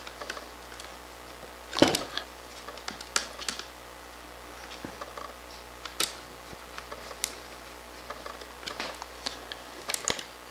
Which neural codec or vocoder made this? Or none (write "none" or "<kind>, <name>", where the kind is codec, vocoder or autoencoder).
none